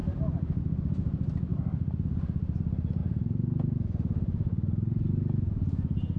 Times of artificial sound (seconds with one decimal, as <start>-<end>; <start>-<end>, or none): 0.0-0.6; 1.5-2.6; 3.0-5.0